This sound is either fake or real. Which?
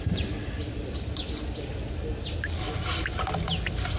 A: real